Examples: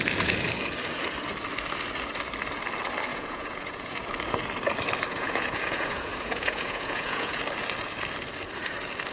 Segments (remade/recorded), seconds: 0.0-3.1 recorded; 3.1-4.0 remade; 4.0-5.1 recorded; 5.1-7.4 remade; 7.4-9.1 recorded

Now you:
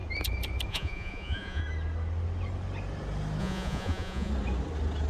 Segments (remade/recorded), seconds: 0.0-0.7 recorded; 0.7-1.6 remade; 1.6-3.4 recorded; 3.4-4.3 remade; 4.3-5.1 recorded

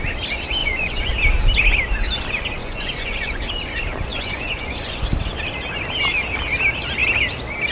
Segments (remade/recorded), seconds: 0.0-0.6 recorded; 0.6-1.1 remade; 1.1-2.6 recorded; 2.6-3.4 remade; 3.4-4.1 recorded; 4.1-5.0 remade; 5.0-7.7 recorded

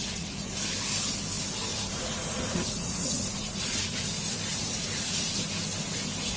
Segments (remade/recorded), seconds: 0.0-0.5 remade; 0.5-1.7 recorded; 1.7-3.9 remade; 3.9-4.5 recorded; 4.5-5.3 remade; 5.3-6.4 recorded

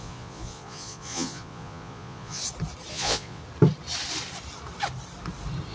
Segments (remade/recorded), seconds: 0.0-2.4 remade; 2.4-2.9 recorded; 2.9-3.4 remade; 3.4-5.7 recorded